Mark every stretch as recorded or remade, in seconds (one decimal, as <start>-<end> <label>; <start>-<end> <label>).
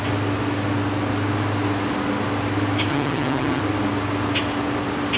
0.0-2.9 recorded; 2.9-3.6 remade; 3.6-5.2 recorded